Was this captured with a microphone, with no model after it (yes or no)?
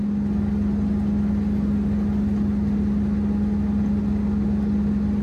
yes